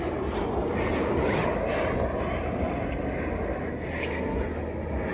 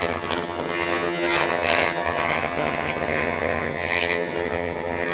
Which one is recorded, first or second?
first